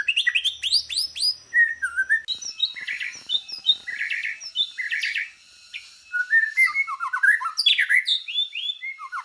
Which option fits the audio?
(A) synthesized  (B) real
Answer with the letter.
B